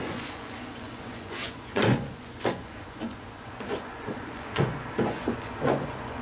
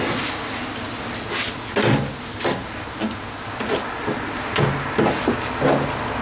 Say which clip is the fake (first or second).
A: first